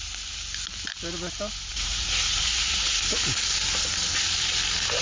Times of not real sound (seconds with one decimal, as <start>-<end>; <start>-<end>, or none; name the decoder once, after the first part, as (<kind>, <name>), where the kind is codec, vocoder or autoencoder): 1.7-3.0 (vocoder, Vocos)